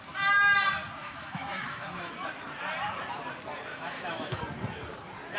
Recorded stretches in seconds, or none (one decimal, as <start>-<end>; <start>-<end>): 0.0-1.0; 2.1-3.7; 4.4-5.4

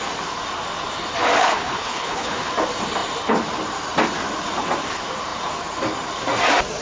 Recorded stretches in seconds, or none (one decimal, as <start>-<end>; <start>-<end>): 0.0-1.4; 2.5-6.8

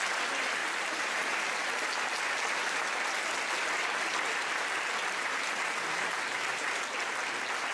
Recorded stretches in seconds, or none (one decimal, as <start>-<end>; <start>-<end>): 0.0-0.6; 1.5-5.2; 6.1-7.7

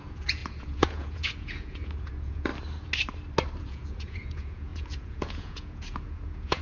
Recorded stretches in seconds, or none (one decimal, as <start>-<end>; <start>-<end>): 2.5-3.6